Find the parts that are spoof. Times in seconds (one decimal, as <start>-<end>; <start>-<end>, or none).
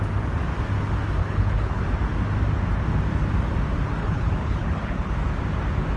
1.2-1.8; 4.0-5.1